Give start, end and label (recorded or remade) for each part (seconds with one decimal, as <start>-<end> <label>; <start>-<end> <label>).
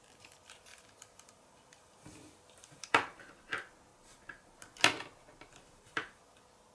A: 0.0-0.7 recorded; 0.7-3.2 remade; 3.2-3.9 recorded; 3.9-4.6 remade; 4.6-5.5 recorded; 5.5-6.2 remade; 6.2-6.7 recorded